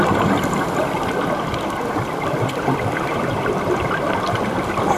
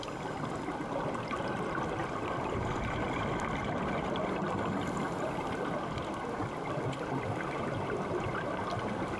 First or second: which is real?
second